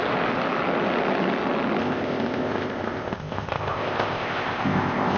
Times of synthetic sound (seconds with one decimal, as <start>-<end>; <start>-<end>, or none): 1.8-5.2